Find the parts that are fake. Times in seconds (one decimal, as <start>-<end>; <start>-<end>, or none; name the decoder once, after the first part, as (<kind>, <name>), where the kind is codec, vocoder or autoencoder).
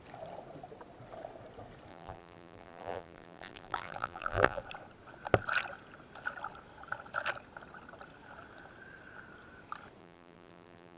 1.9-4.6 (vocoder, BigVGAN v2); 10.0-11.0